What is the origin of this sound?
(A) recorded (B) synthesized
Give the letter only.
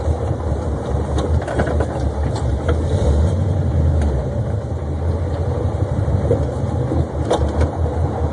B